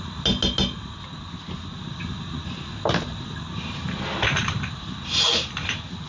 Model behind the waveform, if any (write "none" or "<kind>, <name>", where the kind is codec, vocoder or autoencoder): none